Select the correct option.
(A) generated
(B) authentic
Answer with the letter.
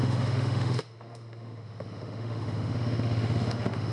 A